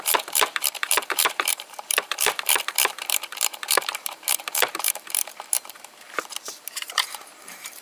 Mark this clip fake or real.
fake